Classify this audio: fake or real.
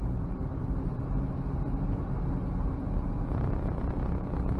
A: real